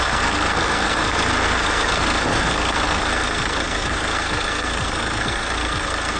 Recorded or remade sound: remade